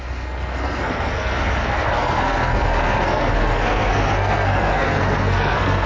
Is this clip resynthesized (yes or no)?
yes